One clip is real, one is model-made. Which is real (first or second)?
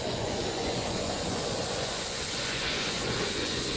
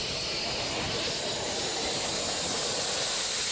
second